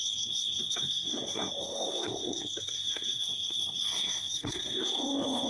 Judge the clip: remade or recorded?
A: remade